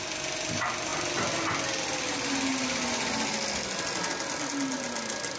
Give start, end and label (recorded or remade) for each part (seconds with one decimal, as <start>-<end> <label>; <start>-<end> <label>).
0.0-5.4 recorded